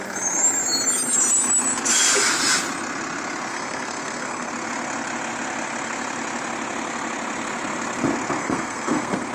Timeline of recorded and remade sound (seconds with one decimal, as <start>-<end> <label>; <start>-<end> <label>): 0.0-3.5 recorded; 3.5-4.5 remade; 4.5-8.4 recorded; 8.4-9.3 remade